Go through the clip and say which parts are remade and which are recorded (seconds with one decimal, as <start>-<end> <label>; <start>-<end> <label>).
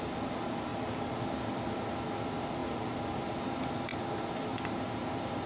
0.0-0.7 recorded; 0.7-1.3 remade; 1.3-2.6 recorded; 2.6-3.2 remade; 3.2-5.5 recorded